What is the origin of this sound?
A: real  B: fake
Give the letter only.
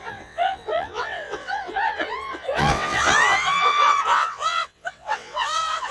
B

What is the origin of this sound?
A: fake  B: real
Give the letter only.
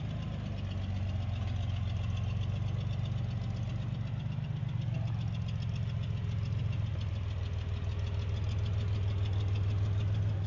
B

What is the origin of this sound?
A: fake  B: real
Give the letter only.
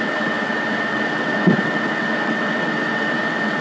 A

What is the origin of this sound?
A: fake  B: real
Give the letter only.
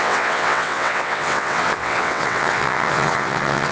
A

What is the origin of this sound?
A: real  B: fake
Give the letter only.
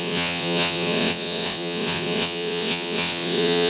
B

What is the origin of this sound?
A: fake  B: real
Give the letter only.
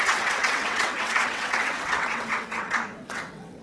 A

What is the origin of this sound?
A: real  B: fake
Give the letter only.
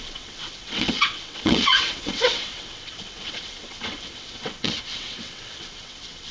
B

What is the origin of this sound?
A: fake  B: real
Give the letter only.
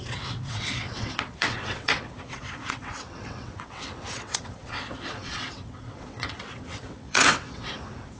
A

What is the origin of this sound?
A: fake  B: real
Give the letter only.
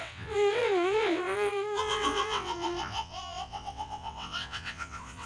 A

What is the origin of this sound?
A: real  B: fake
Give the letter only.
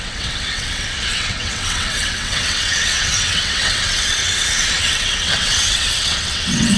B